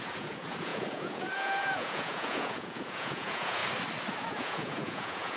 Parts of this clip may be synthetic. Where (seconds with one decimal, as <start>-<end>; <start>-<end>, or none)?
0.0-3.6; 4.3-5.4